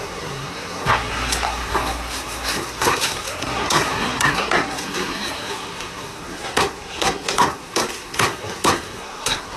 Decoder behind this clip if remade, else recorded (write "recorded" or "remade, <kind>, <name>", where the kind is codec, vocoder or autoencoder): remade, codec, SNAC